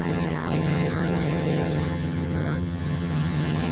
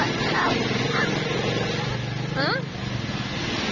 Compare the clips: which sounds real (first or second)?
second